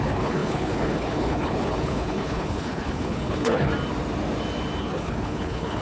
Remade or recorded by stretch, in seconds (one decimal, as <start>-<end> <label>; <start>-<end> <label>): 0.0-3.7 remade; 3.7-4.8 recorded; 4.8-5.8 remade